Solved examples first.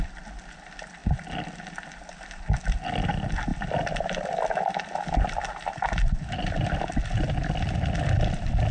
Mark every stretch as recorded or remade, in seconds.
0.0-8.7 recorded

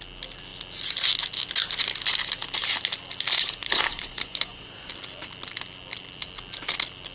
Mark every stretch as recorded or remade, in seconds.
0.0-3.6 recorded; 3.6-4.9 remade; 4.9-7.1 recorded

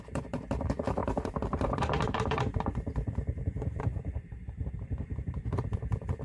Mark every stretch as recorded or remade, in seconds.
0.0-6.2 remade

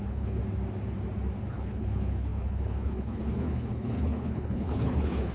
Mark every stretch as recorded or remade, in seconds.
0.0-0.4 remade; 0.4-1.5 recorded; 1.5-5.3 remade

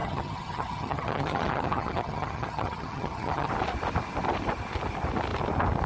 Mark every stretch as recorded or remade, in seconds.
0.0-3.5 remade; 3.5-5.9 recorded